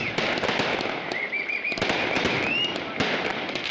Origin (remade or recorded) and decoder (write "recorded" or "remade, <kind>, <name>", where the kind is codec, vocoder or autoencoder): recorded